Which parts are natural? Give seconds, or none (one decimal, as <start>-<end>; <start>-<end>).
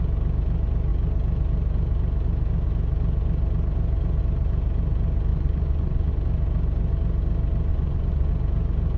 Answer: 0.0-5.3; 6.1-7.7; 8.3-9.0